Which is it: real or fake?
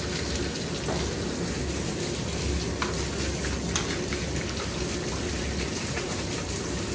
real